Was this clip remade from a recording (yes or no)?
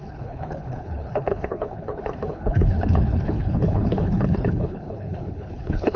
yes